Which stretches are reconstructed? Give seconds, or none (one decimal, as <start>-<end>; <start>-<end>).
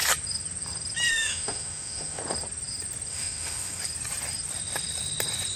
1.1-2.2; 3.1-3.8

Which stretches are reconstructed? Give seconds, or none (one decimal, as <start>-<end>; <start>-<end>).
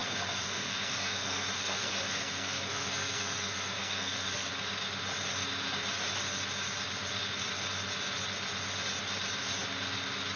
0.0-4.5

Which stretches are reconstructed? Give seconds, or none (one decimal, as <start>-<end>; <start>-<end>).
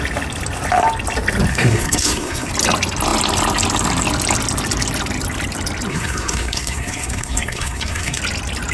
1.5-2.5; 5.9-8.2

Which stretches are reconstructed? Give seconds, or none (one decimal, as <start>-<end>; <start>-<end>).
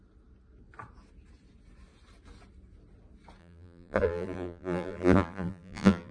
3.4-6.1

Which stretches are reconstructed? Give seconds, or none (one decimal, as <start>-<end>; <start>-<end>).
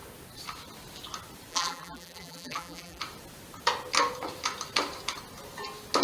1.5-3.0